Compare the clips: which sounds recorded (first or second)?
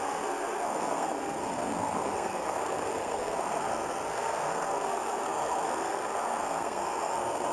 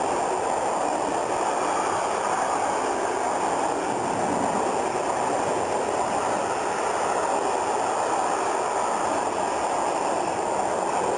second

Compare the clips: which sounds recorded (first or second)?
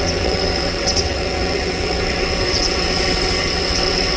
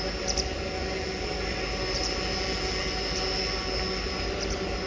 second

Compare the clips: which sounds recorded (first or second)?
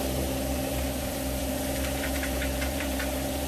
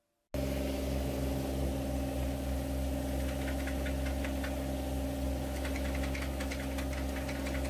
second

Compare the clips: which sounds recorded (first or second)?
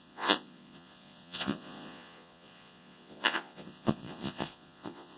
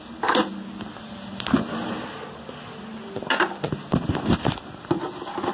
second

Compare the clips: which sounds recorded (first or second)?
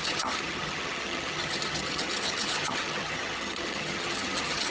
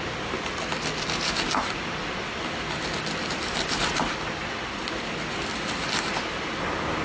second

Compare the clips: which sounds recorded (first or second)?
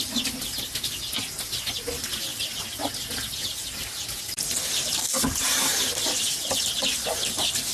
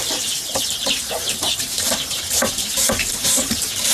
first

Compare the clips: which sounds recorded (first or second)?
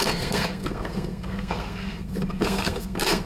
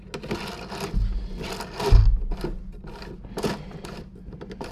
second